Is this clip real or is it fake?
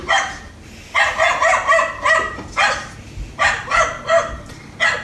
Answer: real